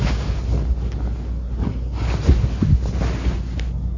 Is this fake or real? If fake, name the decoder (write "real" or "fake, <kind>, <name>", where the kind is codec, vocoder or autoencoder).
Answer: real